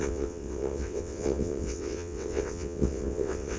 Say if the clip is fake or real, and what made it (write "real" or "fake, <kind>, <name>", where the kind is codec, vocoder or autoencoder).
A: fake, vocoder, WaveNeXt